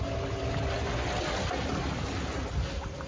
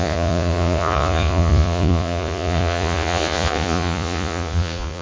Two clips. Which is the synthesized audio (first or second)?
second